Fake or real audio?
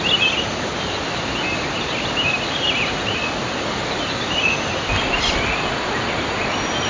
real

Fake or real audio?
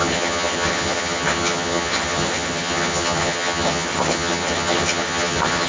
fake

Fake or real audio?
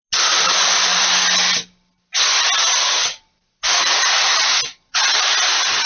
real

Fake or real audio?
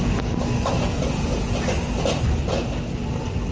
real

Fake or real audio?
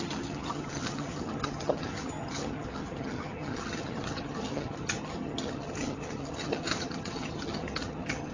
fake